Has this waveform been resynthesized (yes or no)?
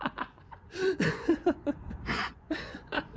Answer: yes